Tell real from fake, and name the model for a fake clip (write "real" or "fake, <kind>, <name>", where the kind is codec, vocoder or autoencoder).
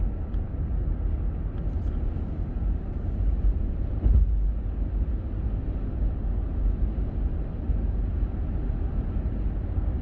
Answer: real